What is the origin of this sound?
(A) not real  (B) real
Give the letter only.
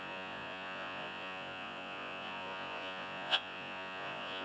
A